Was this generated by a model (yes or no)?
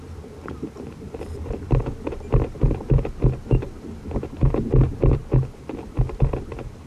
no